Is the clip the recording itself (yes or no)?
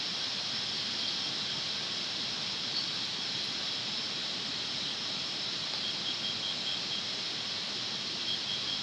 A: yes